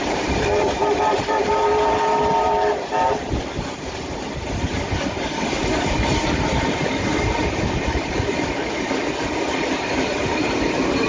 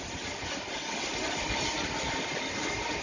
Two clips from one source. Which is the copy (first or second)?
first